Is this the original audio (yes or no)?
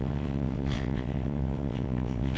no